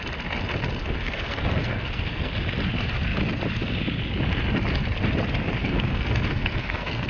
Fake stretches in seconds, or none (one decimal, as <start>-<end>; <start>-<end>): 0.8-2.3; 5.6-7.1